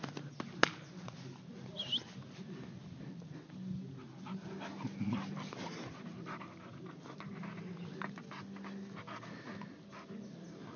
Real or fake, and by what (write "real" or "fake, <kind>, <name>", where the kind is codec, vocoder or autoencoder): real